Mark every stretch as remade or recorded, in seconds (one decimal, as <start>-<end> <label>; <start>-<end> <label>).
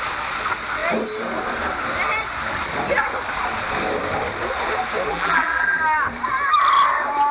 0.0-5.1 recorded; 5.1-5.8 remade; 5.8-7.3 recorded